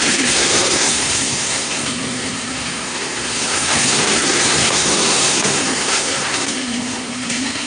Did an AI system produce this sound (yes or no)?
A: yes